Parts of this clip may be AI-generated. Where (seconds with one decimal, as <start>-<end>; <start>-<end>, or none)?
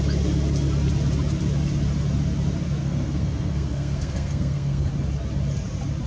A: 2.8-4.9